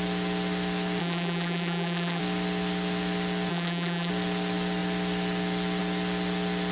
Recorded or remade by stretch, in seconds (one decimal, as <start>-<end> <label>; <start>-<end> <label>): 0.0-1.0 recorded; 1.0-2.2 remade; 2.2-3.5 recorded; 3.5-4.1 remade; 4.1-6.7 recorded